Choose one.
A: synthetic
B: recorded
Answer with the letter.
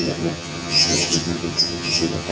A